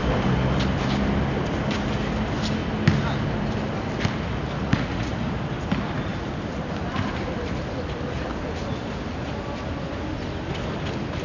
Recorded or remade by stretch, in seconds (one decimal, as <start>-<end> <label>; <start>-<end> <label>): 0.0-4.6 recorded; 4.6-5.1 remade; 5.1-11.2 recorded